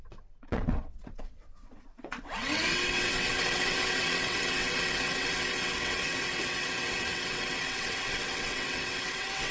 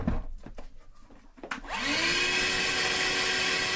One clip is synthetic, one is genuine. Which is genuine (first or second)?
second